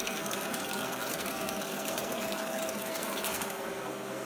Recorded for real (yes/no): no